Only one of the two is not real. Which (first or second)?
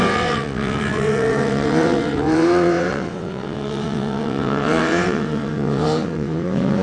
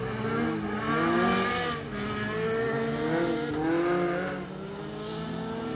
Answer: first